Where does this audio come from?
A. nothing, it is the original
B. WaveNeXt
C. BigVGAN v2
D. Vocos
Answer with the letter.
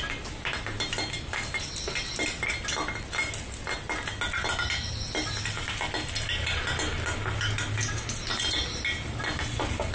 A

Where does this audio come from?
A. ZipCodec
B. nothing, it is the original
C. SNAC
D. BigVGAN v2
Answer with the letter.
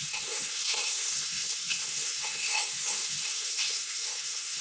C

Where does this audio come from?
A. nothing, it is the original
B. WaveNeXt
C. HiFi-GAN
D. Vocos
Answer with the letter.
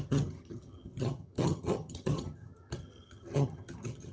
C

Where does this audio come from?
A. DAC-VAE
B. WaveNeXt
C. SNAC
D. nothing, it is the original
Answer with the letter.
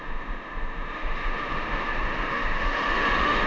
A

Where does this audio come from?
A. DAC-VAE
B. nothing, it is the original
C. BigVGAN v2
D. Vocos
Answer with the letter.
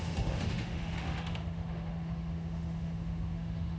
A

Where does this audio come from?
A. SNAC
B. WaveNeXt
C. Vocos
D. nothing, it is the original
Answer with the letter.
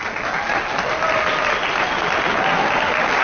D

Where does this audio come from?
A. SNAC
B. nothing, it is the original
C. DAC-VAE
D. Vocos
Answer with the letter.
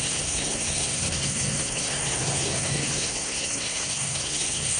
A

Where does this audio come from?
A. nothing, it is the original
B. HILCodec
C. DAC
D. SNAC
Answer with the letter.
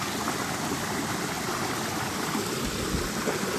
A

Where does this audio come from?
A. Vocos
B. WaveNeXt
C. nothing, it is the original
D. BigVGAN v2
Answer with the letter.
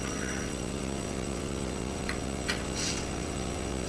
B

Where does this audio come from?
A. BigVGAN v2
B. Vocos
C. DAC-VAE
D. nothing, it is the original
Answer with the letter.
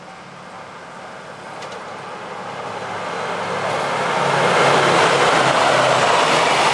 D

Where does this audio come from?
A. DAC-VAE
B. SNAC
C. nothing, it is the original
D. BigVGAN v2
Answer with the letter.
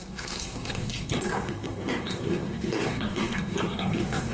B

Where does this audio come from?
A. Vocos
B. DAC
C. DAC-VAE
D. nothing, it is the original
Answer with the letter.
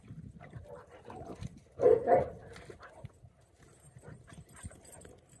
D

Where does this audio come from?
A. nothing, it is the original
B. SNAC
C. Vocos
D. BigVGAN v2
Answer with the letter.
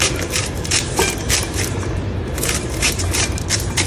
D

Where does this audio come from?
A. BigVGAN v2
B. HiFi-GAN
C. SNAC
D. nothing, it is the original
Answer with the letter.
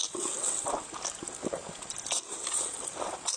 D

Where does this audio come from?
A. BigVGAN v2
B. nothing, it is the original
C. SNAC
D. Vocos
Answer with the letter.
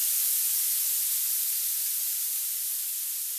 B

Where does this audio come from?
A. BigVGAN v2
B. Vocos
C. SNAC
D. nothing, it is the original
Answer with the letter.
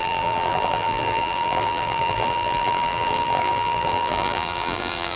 A